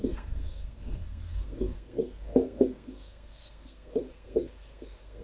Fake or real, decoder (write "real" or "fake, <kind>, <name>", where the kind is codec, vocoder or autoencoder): fake, codec, SNAC